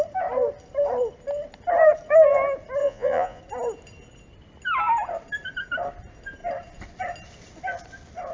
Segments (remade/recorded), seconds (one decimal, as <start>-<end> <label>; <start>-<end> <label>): 0.0-2.8 recorded; 2.8-3.4 remade; 3.4-8.3 recorded